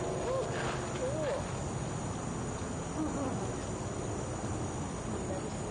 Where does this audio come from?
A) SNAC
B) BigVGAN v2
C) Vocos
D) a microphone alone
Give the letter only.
D